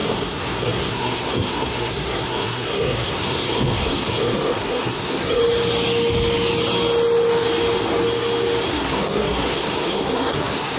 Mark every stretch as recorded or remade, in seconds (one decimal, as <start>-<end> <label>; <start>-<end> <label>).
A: 0.0-5.4 remade; 5.4-8.7 recorded; 8.7-10.8 remade